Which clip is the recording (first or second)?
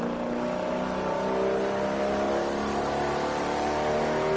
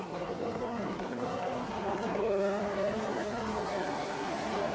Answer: first